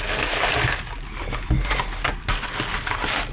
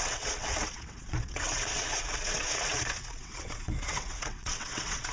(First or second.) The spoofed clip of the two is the second